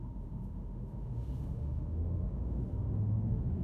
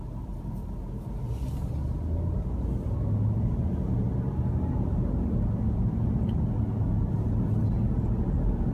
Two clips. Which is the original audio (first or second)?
second